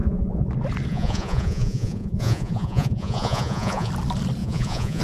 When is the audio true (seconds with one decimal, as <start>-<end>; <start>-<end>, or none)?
0.5-0.9; 3.9-4.4

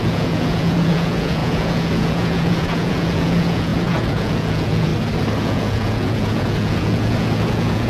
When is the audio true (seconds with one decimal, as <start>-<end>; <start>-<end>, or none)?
4.9-5.4